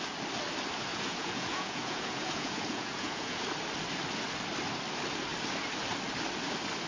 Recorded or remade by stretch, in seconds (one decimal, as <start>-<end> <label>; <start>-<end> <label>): 0.0-0.9 recorded; 0.9-3.4 remade; 3.4-6.9 recorded